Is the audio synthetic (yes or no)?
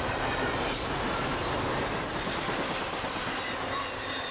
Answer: no